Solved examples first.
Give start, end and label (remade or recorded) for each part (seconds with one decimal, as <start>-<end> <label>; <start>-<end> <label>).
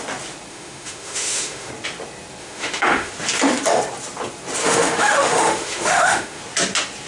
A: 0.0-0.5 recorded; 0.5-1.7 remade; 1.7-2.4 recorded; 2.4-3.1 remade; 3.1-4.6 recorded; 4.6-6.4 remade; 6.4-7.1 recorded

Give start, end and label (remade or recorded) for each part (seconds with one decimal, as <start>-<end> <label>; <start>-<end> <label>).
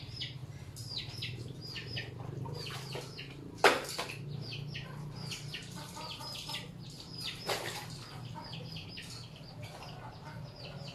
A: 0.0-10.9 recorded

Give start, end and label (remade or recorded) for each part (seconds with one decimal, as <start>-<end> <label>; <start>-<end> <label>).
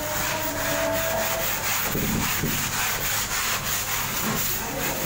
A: 0.0-5.1 recorded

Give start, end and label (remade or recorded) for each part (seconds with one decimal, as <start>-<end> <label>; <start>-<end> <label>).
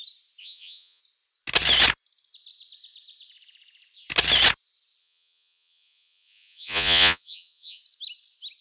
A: 0.0-0.4 recorded; 0.4-1.0 remade; 1.0-5.0 recorded; 5.0-7.8 remade; 7.8-8.6 recorded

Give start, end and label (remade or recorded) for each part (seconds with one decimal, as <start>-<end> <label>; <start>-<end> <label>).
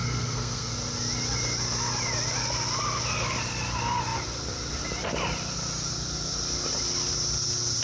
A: 0.0-0.7 remade; 0.7-7.8 recorded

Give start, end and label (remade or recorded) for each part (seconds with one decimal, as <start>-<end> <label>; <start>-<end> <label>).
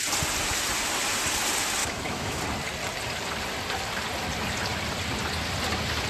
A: 0.0-1.8 recorded; 1.8-2.4 remade; 2.4-6.1 recorded